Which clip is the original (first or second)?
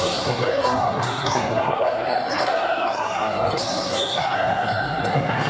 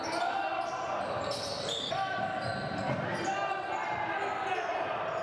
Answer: second